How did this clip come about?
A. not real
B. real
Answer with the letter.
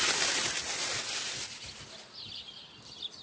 B